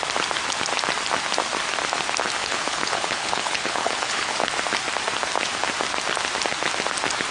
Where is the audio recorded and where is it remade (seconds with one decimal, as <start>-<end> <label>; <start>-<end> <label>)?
0.0-2.4 recorded; 2.4-4.4 remade; 4.4-7.3 recorded